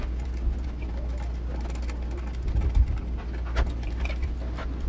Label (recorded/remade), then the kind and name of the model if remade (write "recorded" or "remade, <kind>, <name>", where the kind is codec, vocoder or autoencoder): recorded